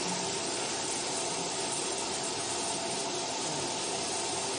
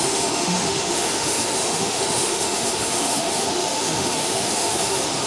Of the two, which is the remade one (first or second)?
second